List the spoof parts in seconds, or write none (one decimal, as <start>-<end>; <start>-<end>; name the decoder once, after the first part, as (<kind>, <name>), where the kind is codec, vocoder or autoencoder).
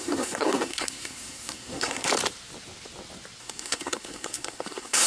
0.0-2.1 (codec, SNAC); 3.4-5.1